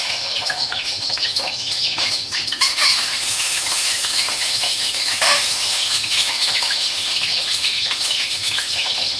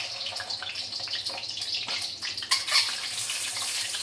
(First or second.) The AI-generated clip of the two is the first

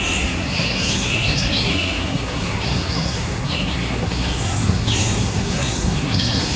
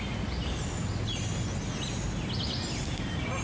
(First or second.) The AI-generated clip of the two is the first